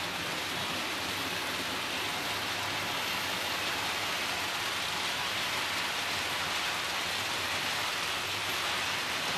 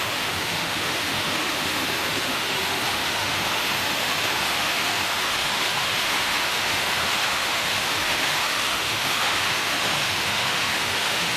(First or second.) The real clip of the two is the first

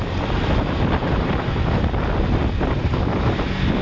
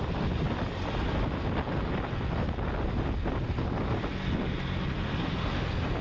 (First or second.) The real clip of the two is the second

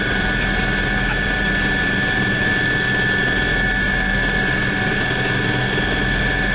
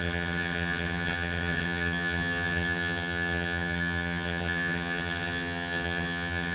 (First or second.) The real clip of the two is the first